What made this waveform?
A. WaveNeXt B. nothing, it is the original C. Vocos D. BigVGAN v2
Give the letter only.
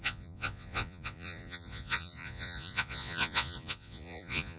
C